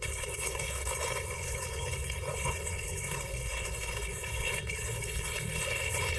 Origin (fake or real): fake